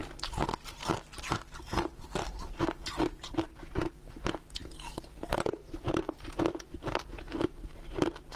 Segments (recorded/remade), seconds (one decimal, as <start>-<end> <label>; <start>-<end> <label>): 0.0-1.3 recorded; 1.3-8.4 remade